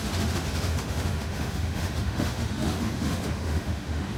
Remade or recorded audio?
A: remade